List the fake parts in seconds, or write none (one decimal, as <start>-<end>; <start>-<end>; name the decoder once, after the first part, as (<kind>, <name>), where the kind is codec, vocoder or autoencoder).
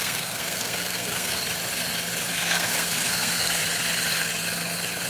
0.0-1.4 (codec, SNAC); 2.3-3.6